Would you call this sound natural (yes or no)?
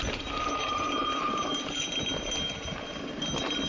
yes